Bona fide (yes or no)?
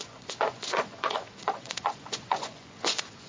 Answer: no